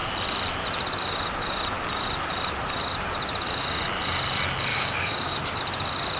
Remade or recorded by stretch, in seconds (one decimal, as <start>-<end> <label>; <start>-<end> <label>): 0.0-4.7 recorded; 4.7-5.6 remade; 5.6-6.2 recorded